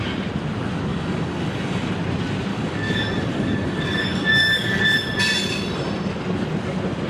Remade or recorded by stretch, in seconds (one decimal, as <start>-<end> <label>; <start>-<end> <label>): 0.0-0.9 recorded; 0.9-1.9 remade; 1.9-2.5 recorded; 2.5-4.8 remade; 4.8-7.1 recorded